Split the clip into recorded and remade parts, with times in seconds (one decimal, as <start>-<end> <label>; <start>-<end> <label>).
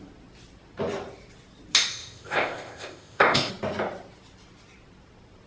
0.0-1.9 recorded; 1.9-3.5 remade; 3.5-5.5 recorded